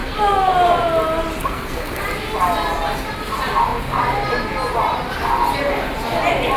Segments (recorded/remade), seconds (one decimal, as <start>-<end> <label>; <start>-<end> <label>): 0.0-0.5 remade; 0.5-1.4 recorded; 1.4-2.0 remade; 2.0-6.6 recorded